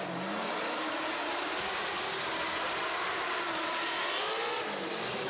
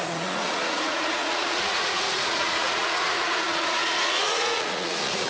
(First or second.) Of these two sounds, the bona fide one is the first